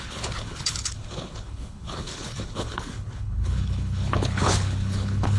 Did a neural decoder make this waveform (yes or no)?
yes